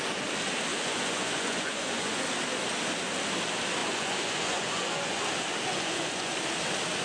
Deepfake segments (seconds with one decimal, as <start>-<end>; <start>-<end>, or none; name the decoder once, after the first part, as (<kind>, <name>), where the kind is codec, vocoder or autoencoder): 0.7-2.2 (vocoder, Vocos); 3.8-5.2; 5.7-6.3